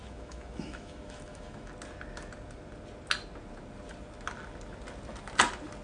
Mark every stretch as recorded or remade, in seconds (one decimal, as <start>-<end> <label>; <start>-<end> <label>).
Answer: 0.0-1.7 remade; 1.7-5.8 recorded